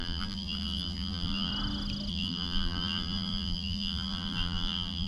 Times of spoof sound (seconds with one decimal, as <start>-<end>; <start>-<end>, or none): 0.0-1.5; 2.1-5.1